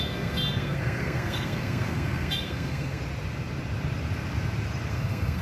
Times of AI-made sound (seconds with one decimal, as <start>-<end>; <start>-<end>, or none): 0.0-3.0; 4.9-5.4